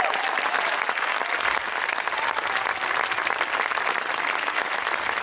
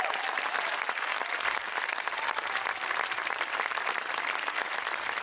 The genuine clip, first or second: first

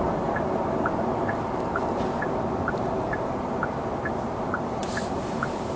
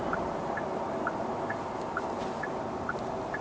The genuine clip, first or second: second